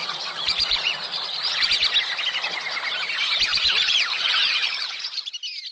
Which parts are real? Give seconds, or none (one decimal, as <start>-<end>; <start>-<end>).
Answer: 1.7-3.5; 5.3-5.7